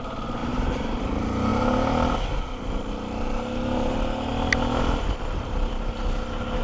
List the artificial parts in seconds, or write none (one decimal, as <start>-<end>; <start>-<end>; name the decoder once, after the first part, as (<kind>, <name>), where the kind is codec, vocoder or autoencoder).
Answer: 0.4-1.0 (vocoder, BigVGAN v2)